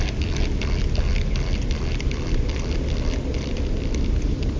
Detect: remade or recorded recorded